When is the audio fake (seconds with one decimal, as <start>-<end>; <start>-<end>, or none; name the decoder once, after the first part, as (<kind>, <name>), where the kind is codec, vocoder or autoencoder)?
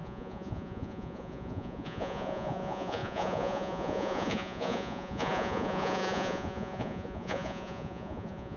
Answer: 0.0-8.6 (vocoder, Vocos)